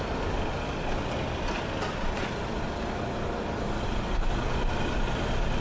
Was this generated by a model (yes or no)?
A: no